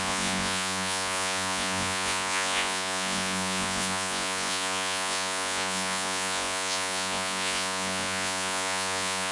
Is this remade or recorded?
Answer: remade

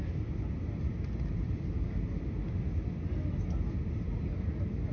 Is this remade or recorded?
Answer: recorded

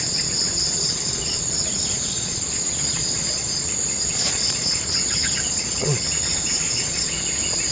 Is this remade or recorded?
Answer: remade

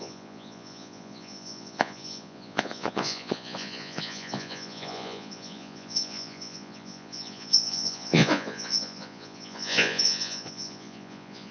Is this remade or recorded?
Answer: remade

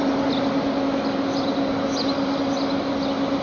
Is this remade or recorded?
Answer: recorded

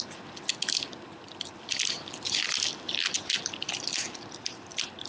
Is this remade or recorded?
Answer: recorded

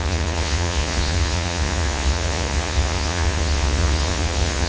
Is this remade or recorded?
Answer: remade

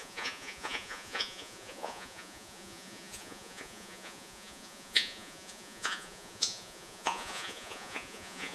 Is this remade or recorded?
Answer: remade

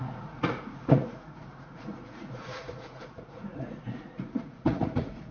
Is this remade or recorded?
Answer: remade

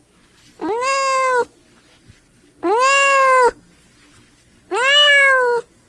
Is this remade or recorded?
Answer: recorded